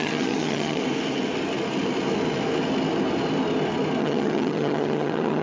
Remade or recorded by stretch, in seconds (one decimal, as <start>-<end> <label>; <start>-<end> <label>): 0.0-0.8 remade; 0.8-4.0 recorded; 4.0-5.4 remade

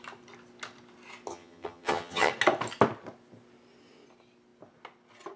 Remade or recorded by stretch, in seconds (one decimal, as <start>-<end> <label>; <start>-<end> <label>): 0.0-1.3 recorded; 1.3-2.3 remade; 2.3-5.4 recorded

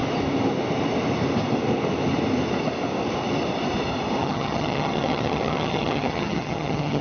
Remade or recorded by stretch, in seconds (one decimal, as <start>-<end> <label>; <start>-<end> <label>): 0.0-4.2 recorded; 4.2-7.0 remade

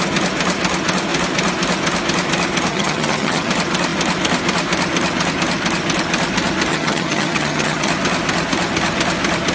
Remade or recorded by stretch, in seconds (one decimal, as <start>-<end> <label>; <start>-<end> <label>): 0.0-2.7 recorded; 2.7-3.5 remade; 3.5-6.7 recorded; 6.7-7.9 remade; 7.9-9.5 recorded

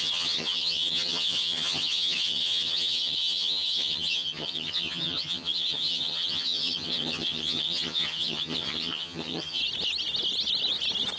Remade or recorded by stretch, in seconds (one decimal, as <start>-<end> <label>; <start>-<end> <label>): 0.0-9.6 remade; 9.6-11.2 recorded

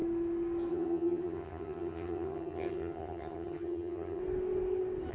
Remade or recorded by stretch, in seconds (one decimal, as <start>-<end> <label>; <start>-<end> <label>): 0.0-0.7 recorded; 0.7-4.2 remade; 4.2-5.1 recorded

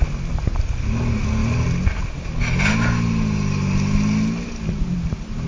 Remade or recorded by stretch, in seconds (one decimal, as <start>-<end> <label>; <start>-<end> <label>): 0.0-5.5 recorded

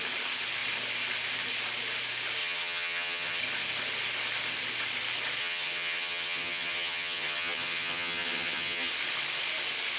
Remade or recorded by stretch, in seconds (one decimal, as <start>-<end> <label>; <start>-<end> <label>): 0.0-2.4 recorded; 2.4-3.4 remade; 3.4-5.4 recorded; 5.4-8.9 remade; 8.9-10.0 recorded